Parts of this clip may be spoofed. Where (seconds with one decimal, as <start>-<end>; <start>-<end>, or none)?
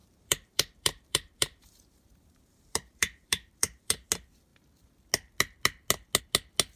0.0-4.1